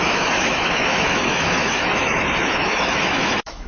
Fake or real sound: fake